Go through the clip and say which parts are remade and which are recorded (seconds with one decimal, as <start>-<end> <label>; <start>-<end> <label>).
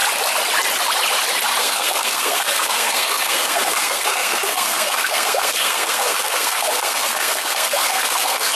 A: 0.0-1.6 recorded; 1.6-8.5 remade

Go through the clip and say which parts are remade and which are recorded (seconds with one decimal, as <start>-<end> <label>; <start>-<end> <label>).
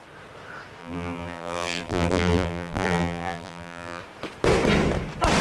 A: 0.0-0.8 recorded; 0.8-4.0 remade; 4.0-5.4 recorded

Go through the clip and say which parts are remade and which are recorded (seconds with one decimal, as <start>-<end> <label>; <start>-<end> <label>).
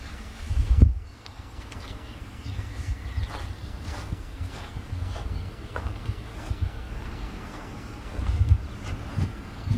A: 0.0-3.0 remade; 3.0-3.5 recorded; 3.5-8.6 remade; 8.6-9.1 recorded; 9.1-9.8 remade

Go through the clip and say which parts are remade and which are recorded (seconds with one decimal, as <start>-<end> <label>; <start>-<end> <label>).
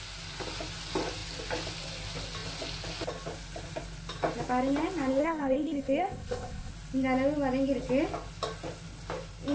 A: 0.0-5.2 recorded; 5.2-6.7 remade; 6.7-9.5 recorded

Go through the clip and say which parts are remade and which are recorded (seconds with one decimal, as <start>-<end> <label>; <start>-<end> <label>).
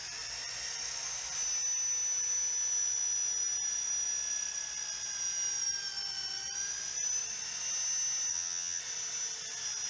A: 0.0-8.3 recorded; 8.3-8.8 remade; 8.8-9.9 recorded